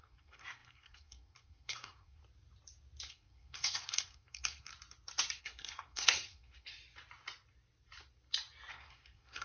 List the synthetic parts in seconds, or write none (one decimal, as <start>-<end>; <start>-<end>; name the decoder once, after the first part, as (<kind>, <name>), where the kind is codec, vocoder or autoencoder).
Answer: 0.0-2.2 (codec, SNAC); 3.1-4.7; 5.4-6.7; 8.7-9.4